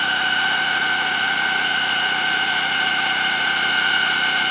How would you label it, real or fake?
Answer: fake